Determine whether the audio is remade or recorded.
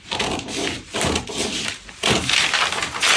recorded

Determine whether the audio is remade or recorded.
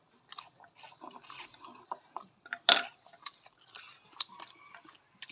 recorded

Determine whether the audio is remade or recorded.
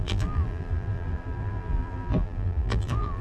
remade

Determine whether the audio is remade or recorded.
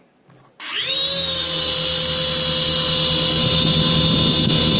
recorded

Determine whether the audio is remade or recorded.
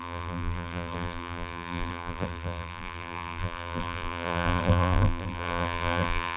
remade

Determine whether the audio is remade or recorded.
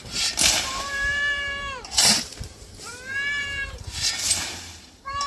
remade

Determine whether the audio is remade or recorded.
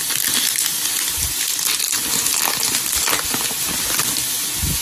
recorded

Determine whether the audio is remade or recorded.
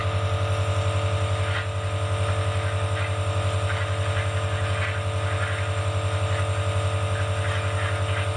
recorded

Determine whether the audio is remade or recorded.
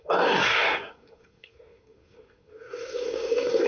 remade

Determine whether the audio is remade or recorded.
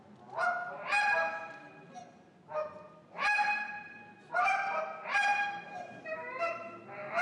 recorded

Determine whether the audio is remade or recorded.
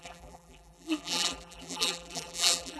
remade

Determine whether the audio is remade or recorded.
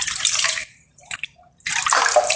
remade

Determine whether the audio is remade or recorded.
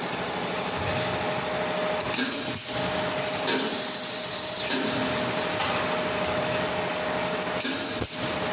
recorded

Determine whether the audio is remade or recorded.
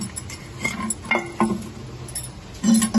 recorded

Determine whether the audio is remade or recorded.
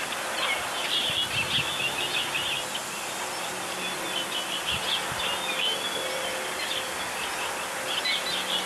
recorded